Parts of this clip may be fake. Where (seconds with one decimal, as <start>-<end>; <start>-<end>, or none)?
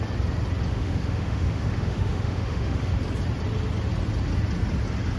0.7-2.9